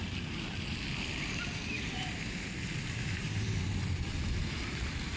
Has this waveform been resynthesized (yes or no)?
no